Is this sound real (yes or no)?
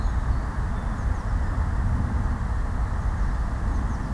yes